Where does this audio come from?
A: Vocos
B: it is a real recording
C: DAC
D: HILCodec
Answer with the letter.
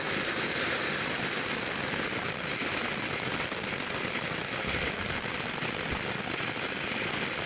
B